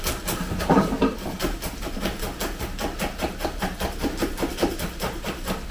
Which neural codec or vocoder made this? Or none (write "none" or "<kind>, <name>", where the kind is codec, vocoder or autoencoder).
none